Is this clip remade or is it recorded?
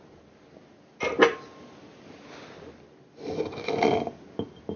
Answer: recorded